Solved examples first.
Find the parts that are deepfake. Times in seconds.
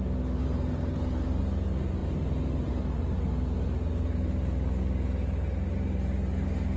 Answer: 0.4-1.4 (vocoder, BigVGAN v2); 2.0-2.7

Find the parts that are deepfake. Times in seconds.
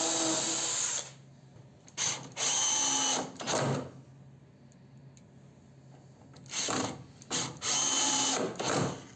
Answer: none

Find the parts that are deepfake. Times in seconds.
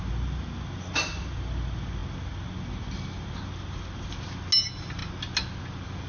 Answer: none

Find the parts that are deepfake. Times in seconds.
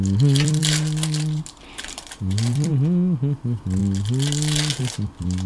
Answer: 0.0-0.6 (vocoder, BigVGAN v2); 1.4-2.7; 3.4-3.8; 4.8-5.5